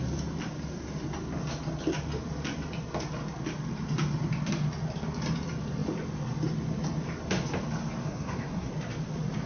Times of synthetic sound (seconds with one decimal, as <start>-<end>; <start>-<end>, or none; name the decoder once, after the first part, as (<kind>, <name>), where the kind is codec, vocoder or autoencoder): 8.0-8.7 (codec, SNAC)